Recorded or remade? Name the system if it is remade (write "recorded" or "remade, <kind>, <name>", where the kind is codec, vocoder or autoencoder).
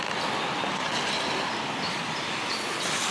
recorded